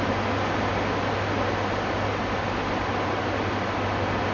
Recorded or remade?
recorded